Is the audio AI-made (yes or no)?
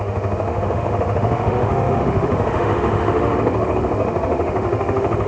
yes